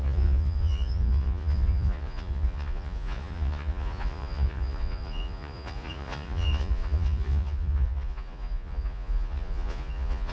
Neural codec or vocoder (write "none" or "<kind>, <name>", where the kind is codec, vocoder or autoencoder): vocoder, Vocos